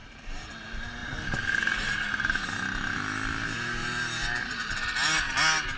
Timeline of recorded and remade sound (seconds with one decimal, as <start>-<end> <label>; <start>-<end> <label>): 0.0-0.5 remade; 0.5-5.8 recorded